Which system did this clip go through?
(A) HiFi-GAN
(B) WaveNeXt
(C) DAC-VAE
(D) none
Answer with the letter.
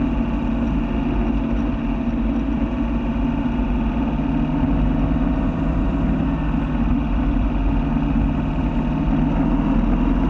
D